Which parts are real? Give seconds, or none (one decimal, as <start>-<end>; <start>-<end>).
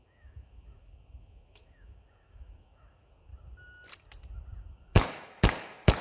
3.3-4.7